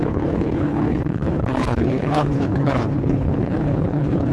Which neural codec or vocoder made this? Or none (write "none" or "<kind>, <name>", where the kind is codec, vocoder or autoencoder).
codec, HILCodec